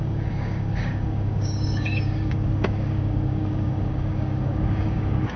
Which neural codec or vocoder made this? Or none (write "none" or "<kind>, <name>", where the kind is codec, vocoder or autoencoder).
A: codec, DAC